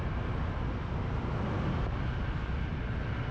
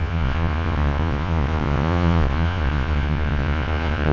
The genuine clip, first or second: first